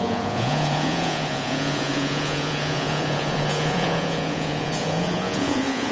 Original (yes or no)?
no